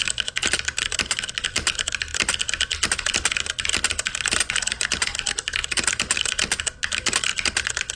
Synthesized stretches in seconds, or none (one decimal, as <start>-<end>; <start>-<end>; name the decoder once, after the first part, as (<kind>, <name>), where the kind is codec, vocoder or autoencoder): none